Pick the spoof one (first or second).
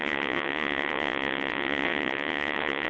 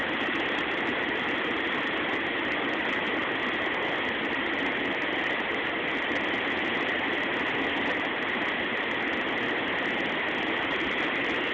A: first